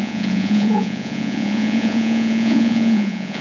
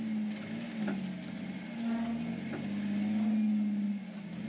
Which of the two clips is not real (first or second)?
first